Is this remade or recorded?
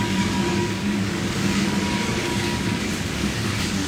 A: remade